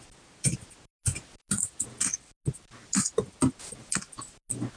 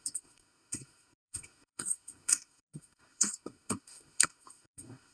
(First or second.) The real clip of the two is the first